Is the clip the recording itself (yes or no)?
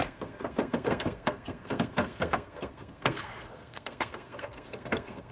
no